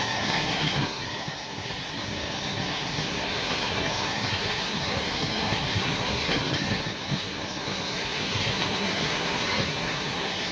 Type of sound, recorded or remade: remade